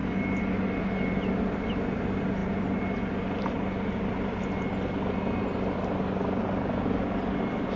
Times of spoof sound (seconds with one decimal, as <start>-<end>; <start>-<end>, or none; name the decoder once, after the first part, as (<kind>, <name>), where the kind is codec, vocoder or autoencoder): none